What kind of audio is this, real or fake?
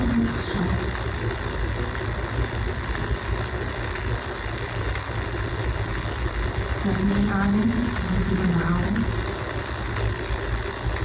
real